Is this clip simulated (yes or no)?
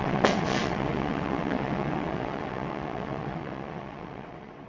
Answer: yes